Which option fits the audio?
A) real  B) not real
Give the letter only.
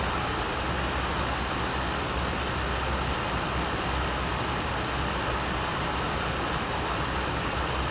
A